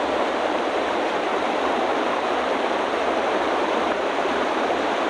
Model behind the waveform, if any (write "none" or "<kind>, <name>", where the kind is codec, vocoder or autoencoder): vocoder, BigVGAN v2